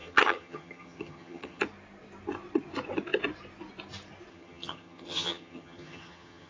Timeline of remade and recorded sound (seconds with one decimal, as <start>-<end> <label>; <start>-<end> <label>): 0.0-1.6 remade; 1.6-4.3 recorded; 4.3-6.5 remade